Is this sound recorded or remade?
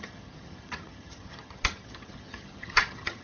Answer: remade